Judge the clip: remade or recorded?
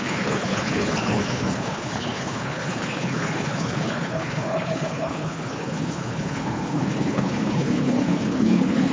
remade